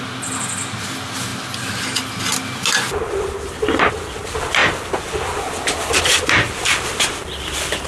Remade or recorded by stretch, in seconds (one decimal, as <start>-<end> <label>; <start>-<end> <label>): 0.0-7.9 recorded